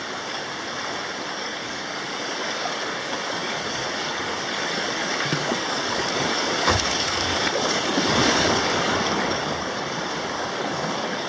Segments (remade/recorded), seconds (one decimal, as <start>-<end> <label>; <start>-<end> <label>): 0.0-0.4 remade; 0.4-1.3 recorded; 1.3-11.3 remade